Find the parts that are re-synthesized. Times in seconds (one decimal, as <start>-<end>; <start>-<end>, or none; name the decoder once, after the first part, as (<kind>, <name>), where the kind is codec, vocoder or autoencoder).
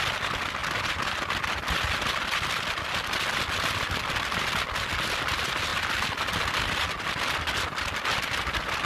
none